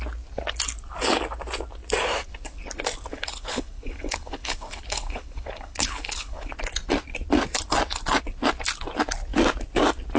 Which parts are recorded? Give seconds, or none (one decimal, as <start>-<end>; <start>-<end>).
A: 0.0-3.1; 6.5-10.2